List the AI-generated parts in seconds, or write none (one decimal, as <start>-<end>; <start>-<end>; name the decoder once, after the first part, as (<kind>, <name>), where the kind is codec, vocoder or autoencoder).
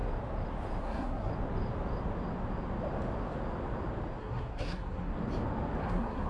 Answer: 0.8-1.3 (codec, SNAC); 4.2-5.1; 5.8-6.3